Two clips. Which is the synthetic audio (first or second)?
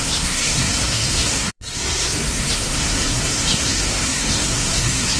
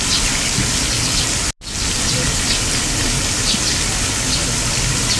first